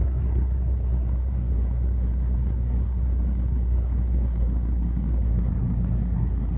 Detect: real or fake fake